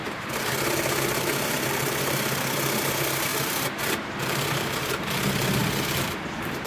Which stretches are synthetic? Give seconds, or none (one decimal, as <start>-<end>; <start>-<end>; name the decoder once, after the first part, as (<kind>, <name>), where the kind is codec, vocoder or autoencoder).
0.0-6.7 (vocoder, BigVGAN v2)